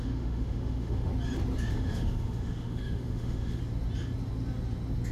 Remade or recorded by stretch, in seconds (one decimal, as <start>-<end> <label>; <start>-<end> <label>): 0.0-1.1 remade; 1.1-1.7 recorded; 1.7-3.6 remade; 3.6-5.1 recorded

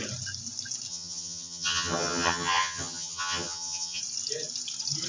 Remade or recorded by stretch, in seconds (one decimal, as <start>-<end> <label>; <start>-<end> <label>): 0.0-0.9 recorded; 0.9-4.0 remade; 4.0-5.1 recorded

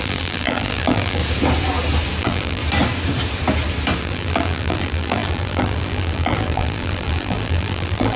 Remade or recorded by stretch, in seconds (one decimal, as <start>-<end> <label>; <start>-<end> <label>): 0.0-1.2 remade; 1.2-2.2 recorded; 2.2-2.6 remade; 2.6-4.0 recorded; 4.0-8.2 remade

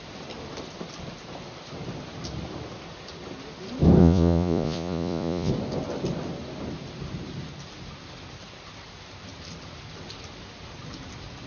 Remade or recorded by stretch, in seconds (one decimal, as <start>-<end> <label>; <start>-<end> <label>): 0.0-4.0 recorded; 4.0-5.5 remade; 5.5-11.5 recorded

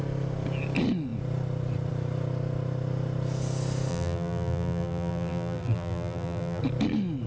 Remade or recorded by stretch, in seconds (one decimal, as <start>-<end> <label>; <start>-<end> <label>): 0.0-3.9 recorded; 3.9-6.6 remade; 6.6-7.3 recorded

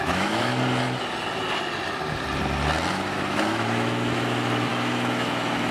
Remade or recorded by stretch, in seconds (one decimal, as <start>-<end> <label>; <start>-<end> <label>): 0.0-0.5 remade; 0.5-2.9 recorded; 2.9-5.7 remade

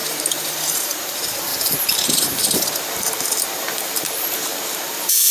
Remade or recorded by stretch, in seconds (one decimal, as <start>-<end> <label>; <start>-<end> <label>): 0.0-5.3 remade